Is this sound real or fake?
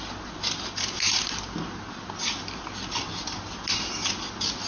real